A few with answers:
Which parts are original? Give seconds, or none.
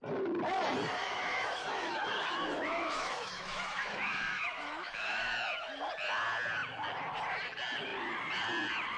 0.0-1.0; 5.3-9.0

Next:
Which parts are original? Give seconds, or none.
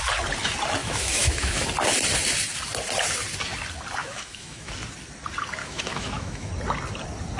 0.0-0.8; 1.6-4.0; 4.7-5.6; 6.5-7.4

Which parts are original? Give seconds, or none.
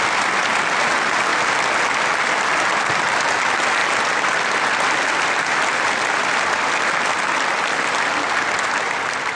0.0-9.3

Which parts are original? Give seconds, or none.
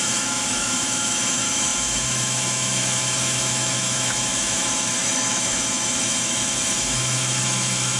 none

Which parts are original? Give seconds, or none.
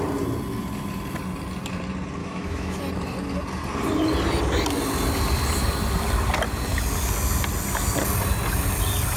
0.0-2.2; 2.8-9.2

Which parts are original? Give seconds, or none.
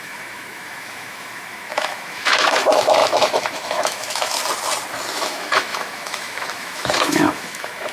4.4-5.1